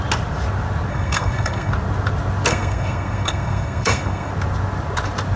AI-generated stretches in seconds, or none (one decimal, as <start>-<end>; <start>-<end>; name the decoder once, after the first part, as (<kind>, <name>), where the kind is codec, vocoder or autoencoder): 0.9-1.7 (codec, SNAC); 2.5-4.3